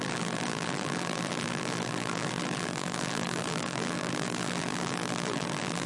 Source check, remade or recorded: remade